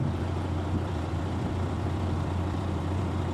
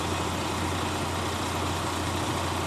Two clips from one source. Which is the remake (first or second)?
first